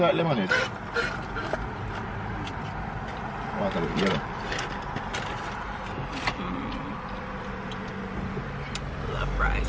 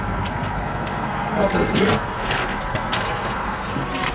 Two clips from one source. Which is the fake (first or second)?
second